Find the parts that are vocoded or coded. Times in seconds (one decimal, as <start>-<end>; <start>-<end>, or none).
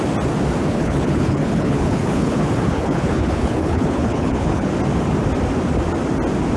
0.7-4.7